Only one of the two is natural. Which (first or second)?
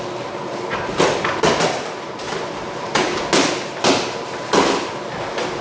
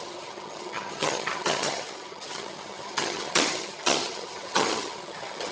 first